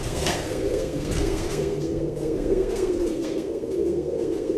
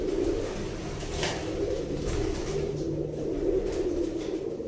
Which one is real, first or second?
second